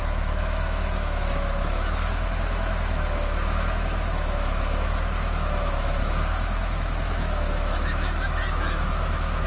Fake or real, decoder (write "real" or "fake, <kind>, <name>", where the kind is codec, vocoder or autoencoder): fake, autoencoder, DAC-VAE